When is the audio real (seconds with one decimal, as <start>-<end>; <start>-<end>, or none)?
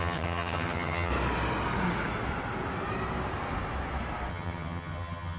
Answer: 1.1-4.3